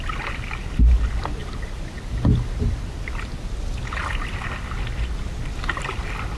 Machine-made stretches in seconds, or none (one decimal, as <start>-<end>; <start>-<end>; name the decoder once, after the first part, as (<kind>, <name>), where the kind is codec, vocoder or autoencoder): none